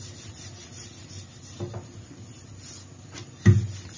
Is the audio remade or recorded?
recorded